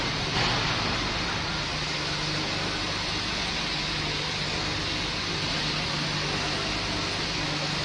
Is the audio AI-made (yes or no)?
no